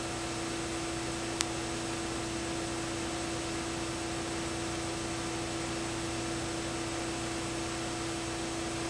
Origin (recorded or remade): recorded